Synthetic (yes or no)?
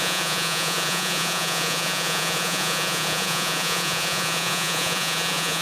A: yes